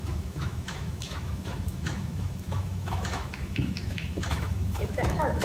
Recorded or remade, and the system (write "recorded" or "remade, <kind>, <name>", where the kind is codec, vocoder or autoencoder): remade, autoencoder, DAC-VAE